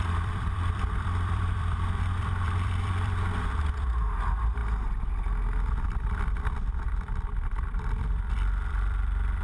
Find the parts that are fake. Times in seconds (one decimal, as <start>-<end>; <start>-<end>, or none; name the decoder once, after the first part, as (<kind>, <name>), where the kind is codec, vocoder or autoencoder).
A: 0.0-4.6 (vocoder, BigVGAN v2); 6.9-9.4